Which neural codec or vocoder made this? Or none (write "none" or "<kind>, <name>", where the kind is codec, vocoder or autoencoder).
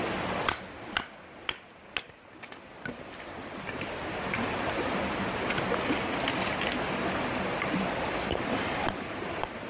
none